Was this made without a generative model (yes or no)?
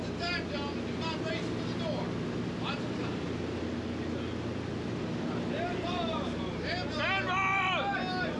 yes